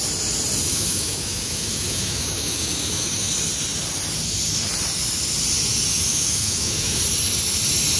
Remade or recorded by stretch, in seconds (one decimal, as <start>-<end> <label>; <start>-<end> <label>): 0.0-0.7 recorded; 0.7-3.3 remade; 3.3-5.9 recorded; 5.9-7.0 remade; 7.0-8.0 recorded